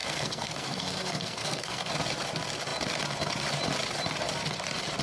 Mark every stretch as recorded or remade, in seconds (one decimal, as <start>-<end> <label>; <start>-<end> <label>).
0.0-1.9 remade; 1.9-5.0 recorded